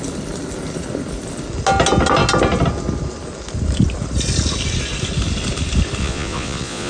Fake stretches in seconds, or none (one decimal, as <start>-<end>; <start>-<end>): 6.0-6.9